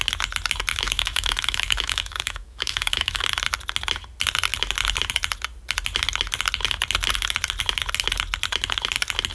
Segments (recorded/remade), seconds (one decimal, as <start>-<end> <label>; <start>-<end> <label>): 0.0-0.7 recorded; 0.7-3.2 remade; 3.2-9.3 recorded